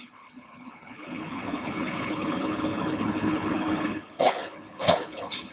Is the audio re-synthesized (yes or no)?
yes